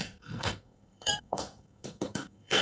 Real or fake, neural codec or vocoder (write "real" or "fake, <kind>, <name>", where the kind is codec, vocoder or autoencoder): fake, codec, SNAC